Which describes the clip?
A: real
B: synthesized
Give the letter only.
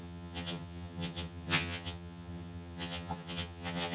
B